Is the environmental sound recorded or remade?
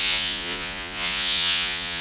remade